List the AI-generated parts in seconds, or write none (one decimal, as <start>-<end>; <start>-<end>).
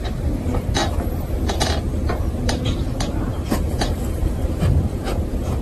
0.0-0.8; 2.1-5.6